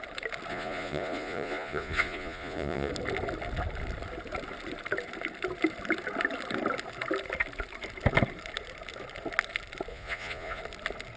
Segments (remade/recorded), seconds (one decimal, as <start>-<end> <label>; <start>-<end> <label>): 0.0-0.5 recorded; 0.5-2.9 remade; 2.9-9.9 recorded; 9.9-10.6 remade; 10.6-11.2 recorded